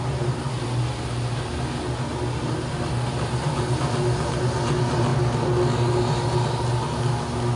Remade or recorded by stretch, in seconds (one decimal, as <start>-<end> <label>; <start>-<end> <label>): 0.0-7.6 recorded